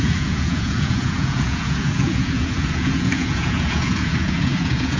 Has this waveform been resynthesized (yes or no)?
yes